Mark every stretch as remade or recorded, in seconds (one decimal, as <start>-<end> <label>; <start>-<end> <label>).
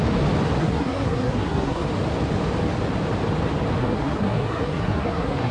0.0-0.6 recorded; 0.6-1.9 remade; 1.9-3.8 recorded; 3.8-5.5 remade